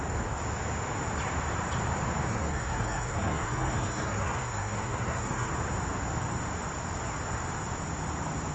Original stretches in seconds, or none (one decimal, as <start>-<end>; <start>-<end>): 0.0-2.3; 5.5-8.5